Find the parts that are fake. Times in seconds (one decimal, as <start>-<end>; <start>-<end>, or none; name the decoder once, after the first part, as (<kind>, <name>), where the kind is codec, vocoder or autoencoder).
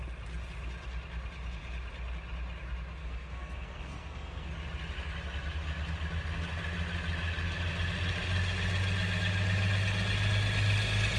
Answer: 3.0-4.5 (codec, SNAC)